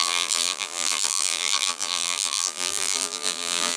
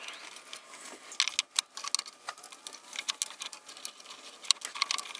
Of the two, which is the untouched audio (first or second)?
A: second